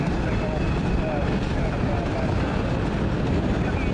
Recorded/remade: recorded